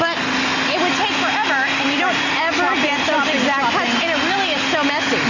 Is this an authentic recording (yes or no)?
yes